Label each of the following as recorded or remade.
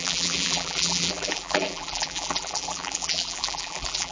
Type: remade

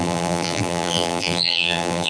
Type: remade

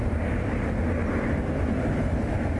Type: recorded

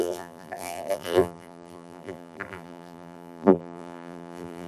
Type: remade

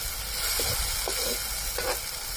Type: recorded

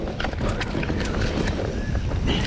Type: recorded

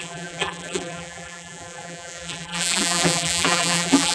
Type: remade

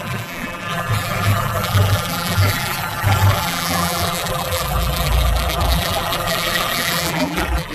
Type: remade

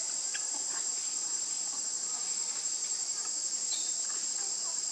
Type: recorded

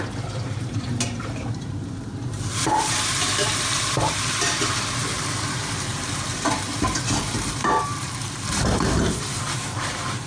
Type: remade